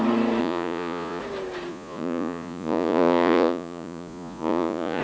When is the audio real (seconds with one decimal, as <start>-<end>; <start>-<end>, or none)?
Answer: 0.0-0.4; 1.2-1.7